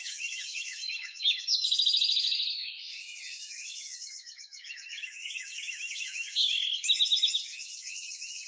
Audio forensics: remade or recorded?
remade